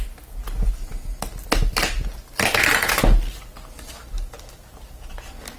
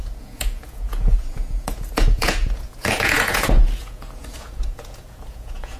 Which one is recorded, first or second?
first